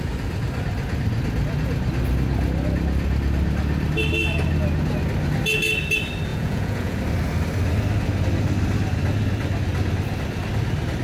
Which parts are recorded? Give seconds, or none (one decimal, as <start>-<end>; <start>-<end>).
0.0-6.3; 7.0-11.0